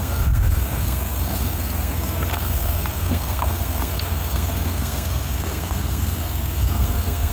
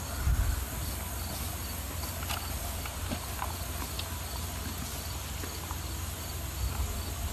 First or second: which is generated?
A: first